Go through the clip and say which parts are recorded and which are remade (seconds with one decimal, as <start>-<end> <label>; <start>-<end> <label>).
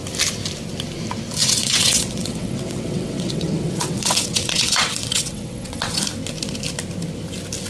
0.0-1.4 recorded; 1.4-6.0 remade; 6.0-7.7 recorded